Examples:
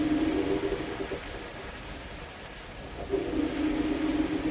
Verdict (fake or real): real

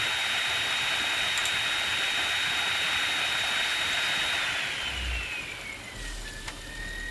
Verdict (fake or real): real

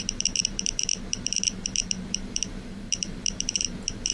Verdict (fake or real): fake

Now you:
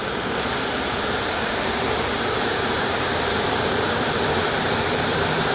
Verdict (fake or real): fake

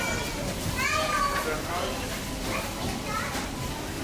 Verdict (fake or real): real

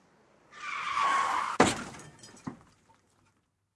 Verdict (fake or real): real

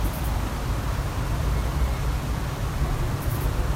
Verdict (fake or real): fake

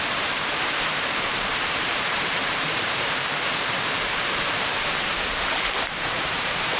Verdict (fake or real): fake